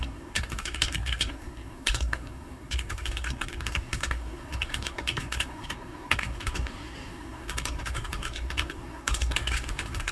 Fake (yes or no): yes